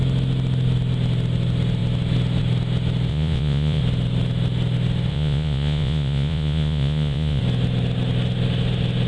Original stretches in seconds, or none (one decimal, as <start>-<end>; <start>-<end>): 0.0-3.1; 3.8-5.1; 7.4-9.1